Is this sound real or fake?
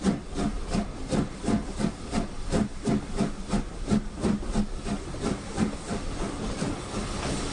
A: real